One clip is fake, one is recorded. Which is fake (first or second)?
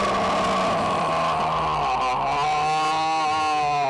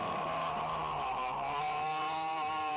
second